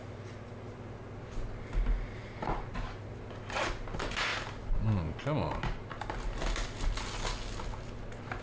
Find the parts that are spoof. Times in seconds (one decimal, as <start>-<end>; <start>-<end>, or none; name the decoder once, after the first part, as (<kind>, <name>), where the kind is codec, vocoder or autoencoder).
none